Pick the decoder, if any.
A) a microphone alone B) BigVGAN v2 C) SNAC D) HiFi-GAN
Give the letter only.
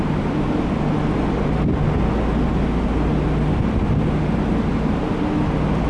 A